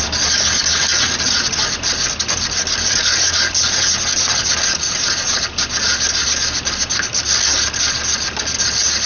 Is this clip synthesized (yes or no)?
no